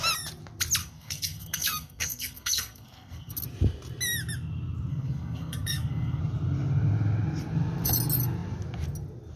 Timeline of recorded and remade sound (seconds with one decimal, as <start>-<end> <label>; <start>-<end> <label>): 0.0-0.8 recorded; 0.8-3.3 remade; 3.3-4.9 recorded; 4.9-6.2 remade; 6.2-9.4 recorded